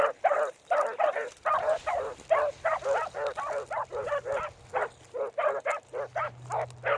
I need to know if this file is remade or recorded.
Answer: recorded